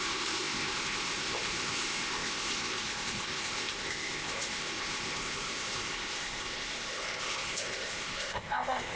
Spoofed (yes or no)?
yes